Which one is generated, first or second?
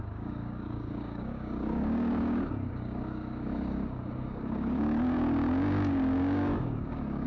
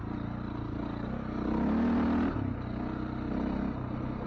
first